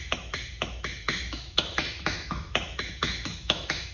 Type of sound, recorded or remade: remade